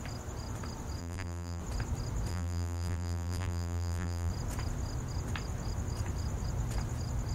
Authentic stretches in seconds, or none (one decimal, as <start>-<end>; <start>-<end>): 0.0-1.0; 1.6-2.3; 4.3-7.3

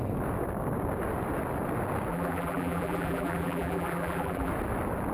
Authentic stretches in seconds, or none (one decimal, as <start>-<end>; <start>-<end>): 0.0-2.1; 4.5-5.1